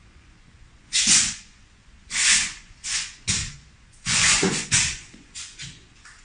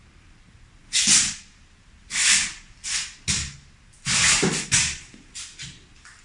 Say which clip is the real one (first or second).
second